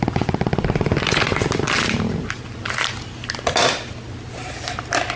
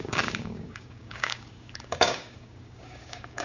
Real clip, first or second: first